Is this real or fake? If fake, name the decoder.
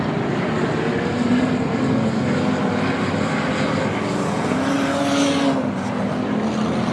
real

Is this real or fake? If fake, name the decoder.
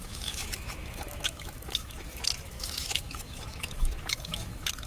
fake, autoencoder, DAC-VAE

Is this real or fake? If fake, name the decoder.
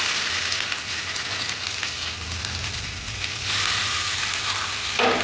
real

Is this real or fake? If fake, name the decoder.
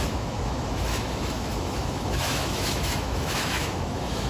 fake, autoencoder, DAC-VAE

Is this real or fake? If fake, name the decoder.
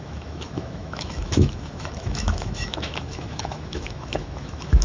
fake, autoencoder, DAC-VAE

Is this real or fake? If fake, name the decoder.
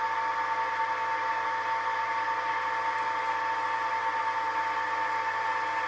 real